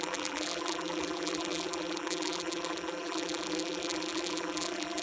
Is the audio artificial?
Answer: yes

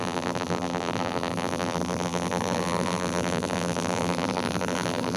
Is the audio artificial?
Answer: yes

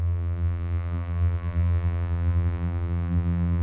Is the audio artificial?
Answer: yes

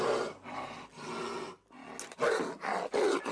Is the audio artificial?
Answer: no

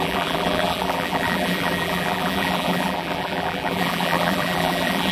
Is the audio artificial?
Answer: yes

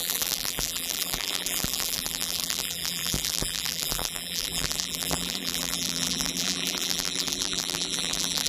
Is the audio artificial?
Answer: yes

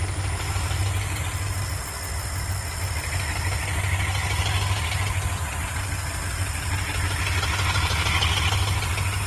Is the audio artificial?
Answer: no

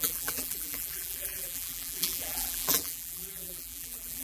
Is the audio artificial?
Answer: yes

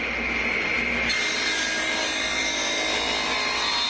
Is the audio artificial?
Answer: no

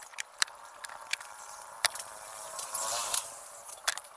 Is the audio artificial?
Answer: yes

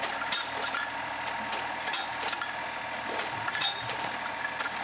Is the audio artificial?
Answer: yes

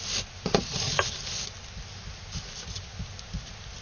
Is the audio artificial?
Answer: no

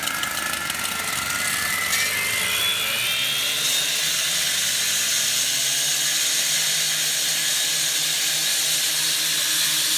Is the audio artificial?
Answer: no